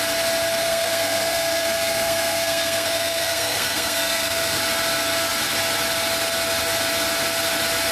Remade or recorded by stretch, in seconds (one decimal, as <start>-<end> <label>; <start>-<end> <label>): 0.0-0.6 recorded; 0.6-4.6 remade; 4.6-7.9 recorded